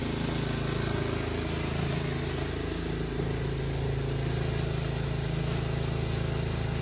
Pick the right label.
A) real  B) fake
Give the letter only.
A